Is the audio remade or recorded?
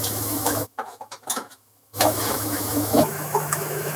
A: remade